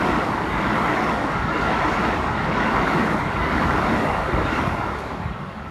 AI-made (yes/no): yes